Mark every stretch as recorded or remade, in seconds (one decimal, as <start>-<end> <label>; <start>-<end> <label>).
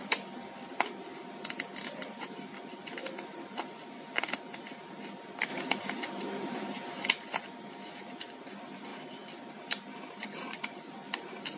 0.0-11.6 recorded